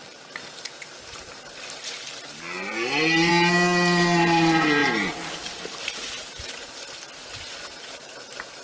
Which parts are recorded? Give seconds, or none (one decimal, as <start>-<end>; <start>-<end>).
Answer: 0.0-8.6